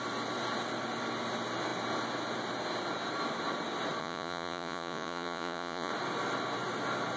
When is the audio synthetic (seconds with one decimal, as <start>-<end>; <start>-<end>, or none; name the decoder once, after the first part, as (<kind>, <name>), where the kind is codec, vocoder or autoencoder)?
4.0-5.9 (vocoder, Vocos)